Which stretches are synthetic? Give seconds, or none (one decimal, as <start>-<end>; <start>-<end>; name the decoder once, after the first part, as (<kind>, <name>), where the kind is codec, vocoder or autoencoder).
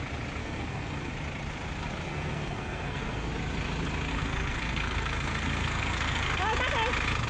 0.4-1.1 (codec, SNAC); 2.1-3.3; 4.1-6.4